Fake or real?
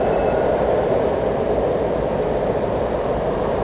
real